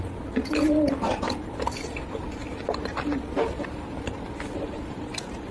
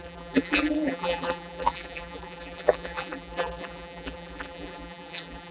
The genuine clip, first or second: first